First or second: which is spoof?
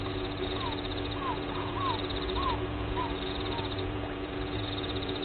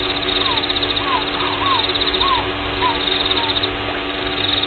first